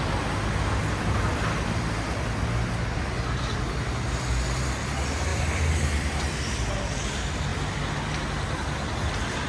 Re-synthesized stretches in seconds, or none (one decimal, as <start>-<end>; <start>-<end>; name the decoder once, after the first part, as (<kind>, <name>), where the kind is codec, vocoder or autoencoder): 0.8-1.8 (vocoder, BigVGAN v2); 5.3-6.5